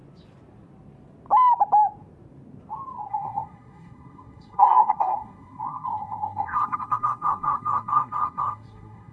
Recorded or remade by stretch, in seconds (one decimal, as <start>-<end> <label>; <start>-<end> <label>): 0.0-3.1 recorded; 3.1-9.1 remade